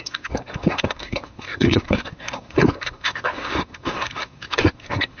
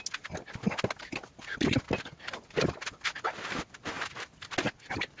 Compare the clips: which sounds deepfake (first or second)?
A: first